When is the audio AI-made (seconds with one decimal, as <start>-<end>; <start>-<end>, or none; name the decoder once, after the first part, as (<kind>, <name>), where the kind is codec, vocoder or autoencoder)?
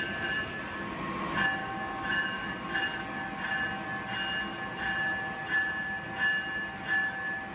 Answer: 1.6-2.5 (codec, DAC)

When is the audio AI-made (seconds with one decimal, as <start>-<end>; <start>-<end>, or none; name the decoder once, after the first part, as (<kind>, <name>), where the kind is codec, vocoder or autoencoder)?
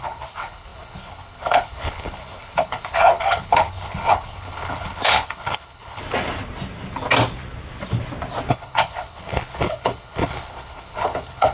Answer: 0.0-6.0 (codec, HILCodec); 8.5-11.5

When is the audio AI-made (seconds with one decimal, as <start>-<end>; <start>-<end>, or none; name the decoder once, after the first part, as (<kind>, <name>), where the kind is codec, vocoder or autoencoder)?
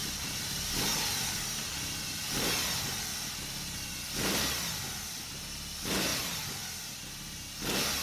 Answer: 0.0-2.5 (vocoder, BigVGAN v2)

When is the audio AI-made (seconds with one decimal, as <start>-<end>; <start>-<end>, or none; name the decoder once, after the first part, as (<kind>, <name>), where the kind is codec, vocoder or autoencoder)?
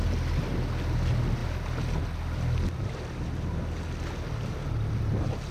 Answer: none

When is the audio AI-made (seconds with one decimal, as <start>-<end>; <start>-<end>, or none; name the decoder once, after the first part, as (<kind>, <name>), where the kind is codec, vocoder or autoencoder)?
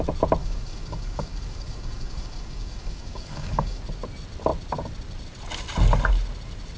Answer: 0.4-3.8 (codec, DAC)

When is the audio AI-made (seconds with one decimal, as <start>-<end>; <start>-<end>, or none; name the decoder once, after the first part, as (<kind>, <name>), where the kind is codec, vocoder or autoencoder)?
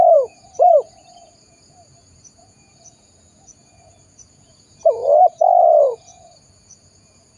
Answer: 0.0-7.4 (vocoder, Vocos)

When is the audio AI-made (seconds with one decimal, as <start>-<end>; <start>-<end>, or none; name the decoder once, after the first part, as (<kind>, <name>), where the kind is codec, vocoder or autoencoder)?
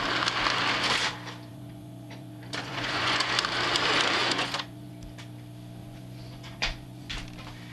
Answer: 1.5-3.3 (vocoder, Vocos); 4.2-4.9; 5.8-7.1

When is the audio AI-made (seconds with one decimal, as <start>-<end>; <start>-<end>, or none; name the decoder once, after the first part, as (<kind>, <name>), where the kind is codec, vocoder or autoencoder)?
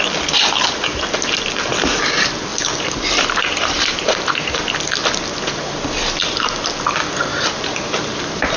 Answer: 2.5-4.6 (vocoder, BigVGAN v2); 7.3-8.6